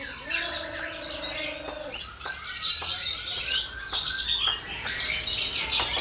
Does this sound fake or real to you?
real